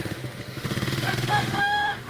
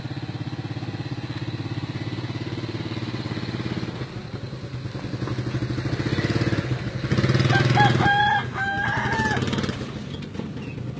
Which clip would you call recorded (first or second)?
second